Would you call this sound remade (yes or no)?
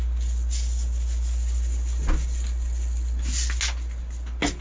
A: no